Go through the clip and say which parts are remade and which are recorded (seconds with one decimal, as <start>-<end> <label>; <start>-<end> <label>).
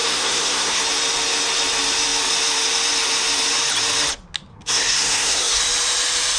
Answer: 0.0-0.8 remade; 0.8-4.5 recorded; 4.5-5.6 remade; 5.6-6.4 recorded